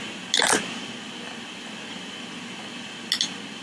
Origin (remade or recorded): recorded